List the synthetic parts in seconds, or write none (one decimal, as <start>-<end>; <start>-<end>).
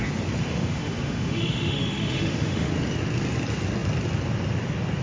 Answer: 0.4-2.7